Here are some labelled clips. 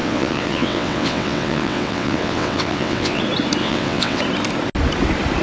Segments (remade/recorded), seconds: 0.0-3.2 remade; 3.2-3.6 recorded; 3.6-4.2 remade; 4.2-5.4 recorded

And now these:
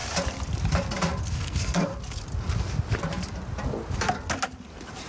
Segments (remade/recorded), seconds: 0.0-1.2 recorded; 1.2-1.9 remade; 1.9-5.1 recorded

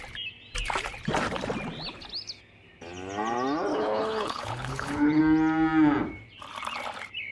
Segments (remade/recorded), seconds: 0.0-3.7 recorded; 3.7-5.2 remade; 5.2-7.3 recorded

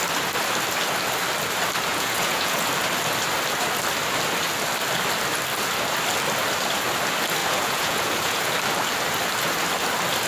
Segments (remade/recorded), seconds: 0.0-1.9 recorded; 1.9-2.7 remade; 2.7-7.4 recorded; 7.4-8.5 remade; 8.5-10.3 recorded

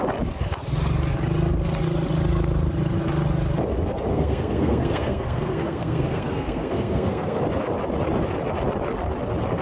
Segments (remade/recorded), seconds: 0.0-4.1 recorded; 4.1-7.4 remade; 7.4-9.6 recorded

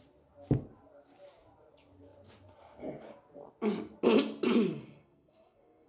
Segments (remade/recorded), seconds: 0.0-4.7 recorded; 4.7-5.9 remade

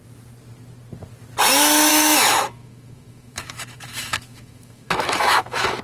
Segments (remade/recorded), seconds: 0.0-1.9 recorded; 1.9-5.8 remade